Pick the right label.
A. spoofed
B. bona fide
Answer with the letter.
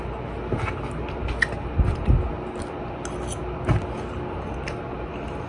B